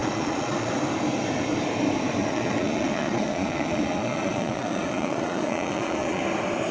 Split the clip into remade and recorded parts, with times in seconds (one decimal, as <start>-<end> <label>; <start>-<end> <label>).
0.0-0.7 remade; 0.7-2.2 recorded; 2.2-6.2 remade; 6.2-6.7 recorded